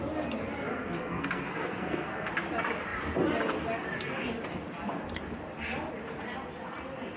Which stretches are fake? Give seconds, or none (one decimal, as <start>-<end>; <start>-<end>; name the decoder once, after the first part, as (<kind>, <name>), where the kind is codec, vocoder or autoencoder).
0.7-2.3 (codec, SNAC)